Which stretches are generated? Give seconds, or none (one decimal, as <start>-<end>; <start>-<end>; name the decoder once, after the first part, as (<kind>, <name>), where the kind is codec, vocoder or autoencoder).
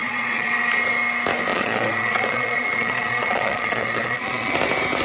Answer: 0.0-0.5 (vocoder, Vocos); 1.5-4.5